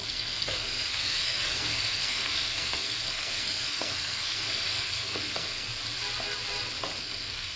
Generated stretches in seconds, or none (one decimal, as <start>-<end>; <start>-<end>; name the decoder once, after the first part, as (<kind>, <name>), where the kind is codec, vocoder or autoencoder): 0.0-5.7 (codec, SNAC); 7.0-7.6